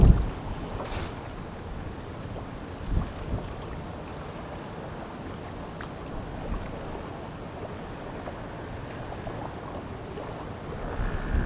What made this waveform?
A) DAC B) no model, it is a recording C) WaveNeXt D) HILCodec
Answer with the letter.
B